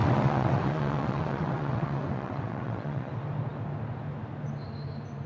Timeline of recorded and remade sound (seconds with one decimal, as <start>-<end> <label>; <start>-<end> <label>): 0.0-3.1 remade; 3.1-5.3 recorded